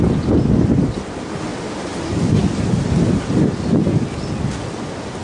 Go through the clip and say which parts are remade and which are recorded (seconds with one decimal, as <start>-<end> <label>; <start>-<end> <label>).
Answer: 0.0-5.2 recorded